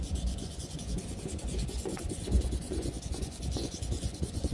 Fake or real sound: fake